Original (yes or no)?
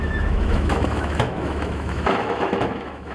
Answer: no